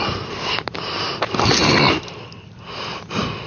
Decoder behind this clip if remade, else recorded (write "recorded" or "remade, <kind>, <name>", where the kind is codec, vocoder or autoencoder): recorded